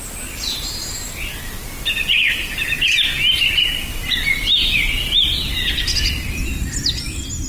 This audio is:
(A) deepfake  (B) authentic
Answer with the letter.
B